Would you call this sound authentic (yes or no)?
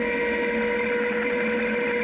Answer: yes